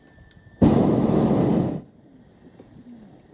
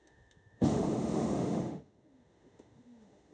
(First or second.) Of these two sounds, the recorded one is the first